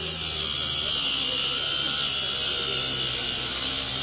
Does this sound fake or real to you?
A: real